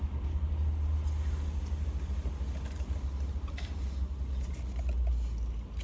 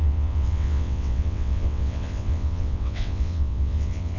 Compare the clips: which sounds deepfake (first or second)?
second